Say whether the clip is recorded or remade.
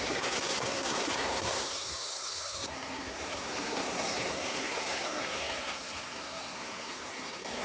remade